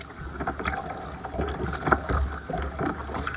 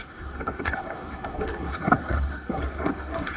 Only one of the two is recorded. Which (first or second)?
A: first